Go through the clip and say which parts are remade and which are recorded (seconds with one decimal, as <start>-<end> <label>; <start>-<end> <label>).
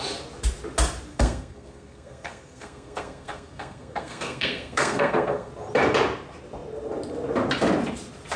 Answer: 0.0-1.1 recorded; 1.1-5.5 remade; 5.5-8.4 recorded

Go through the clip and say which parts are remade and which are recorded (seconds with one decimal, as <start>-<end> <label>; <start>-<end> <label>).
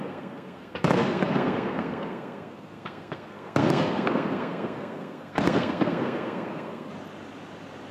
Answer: 0.0-6.9 remade; 6.9-7.9 recorded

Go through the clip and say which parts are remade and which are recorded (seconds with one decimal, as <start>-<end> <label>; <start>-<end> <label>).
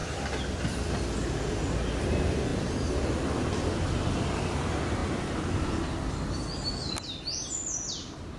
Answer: 0.0-8.4 recorded